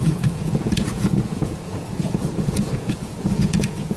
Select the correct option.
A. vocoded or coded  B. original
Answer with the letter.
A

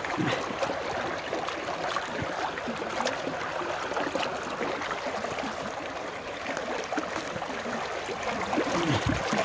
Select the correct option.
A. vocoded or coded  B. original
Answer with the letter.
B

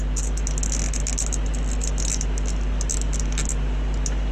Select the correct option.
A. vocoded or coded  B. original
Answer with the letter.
B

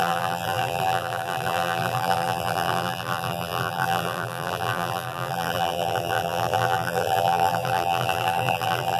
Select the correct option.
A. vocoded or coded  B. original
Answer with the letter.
A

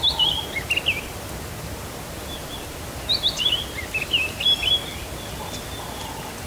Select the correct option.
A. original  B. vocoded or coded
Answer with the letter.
A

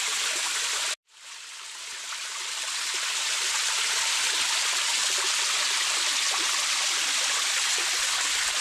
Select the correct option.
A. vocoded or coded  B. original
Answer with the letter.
B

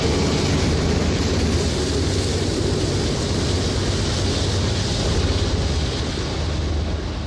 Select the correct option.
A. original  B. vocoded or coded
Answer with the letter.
A